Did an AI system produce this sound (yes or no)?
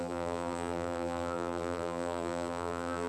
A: yes